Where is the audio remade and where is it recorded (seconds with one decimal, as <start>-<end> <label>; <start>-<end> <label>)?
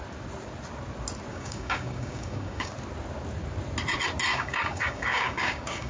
0.0-1.3 recorded; 1.3-2.7 remade; 2.7-4.3 recorded; 4.3-5.9 remade